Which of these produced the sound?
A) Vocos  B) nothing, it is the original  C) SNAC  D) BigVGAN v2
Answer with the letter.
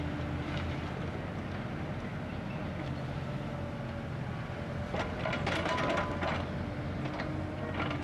B